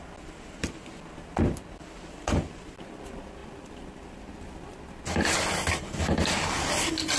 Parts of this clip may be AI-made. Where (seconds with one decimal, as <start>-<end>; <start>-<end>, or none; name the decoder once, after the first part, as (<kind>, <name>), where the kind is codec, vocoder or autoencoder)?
none